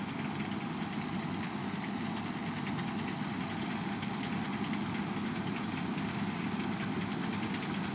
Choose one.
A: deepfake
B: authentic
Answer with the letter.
B